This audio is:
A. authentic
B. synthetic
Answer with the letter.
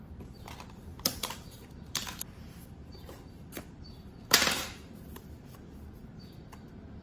B